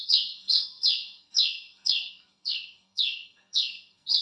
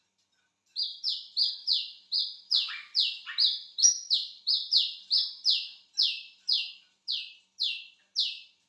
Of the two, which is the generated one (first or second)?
first